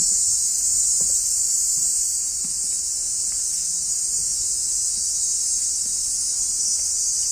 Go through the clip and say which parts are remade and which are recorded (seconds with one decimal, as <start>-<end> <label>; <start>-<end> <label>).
0.0-0.7 recorded; 0.7-2.2 remade; 2.2-7.3 recorded